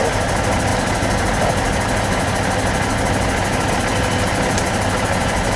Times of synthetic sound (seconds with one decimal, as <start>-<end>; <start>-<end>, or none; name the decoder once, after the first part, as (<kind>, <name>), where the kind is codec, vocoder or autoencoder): none